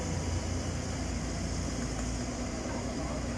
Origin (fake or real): real